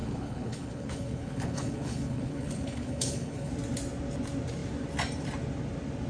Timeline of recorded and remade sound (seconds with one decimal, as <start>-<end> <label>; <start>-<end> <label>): 0.0-3.5 remade; 3.5-6.1 recorded